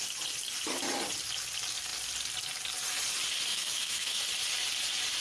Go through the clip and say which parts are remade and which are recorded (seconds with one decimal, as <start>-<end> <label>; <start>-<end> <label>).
0.0-3.5 recorded; 3.5-4.2 remade; 4.2-5.2 recorded